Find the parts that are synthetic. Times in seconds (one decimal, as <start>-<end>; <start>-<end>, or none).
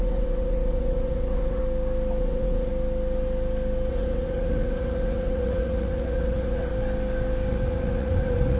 0.0-1.6; 2.2-2.7; 3.9-6.7; 7.5-8.6